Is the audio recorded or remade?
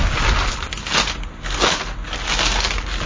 recorded